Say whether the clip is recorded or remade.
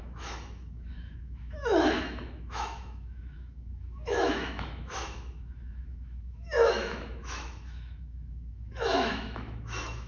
remade